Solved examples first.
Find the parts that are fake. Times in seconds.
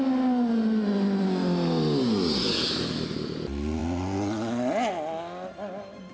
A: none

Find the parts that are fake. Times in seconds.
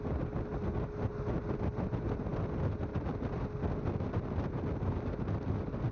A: none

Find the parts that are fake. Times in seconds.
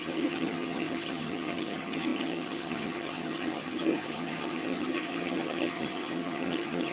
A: 0.0-6.9 (vocoder, HiFi-GAN)